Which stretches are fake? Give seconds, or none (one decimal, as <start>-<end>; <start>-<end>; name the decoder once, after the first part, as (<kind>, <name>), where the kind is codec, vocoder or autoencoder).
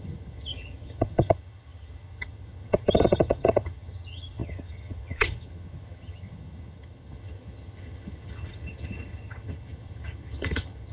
0.0-10.9 (vocoder, HiFi-GAN)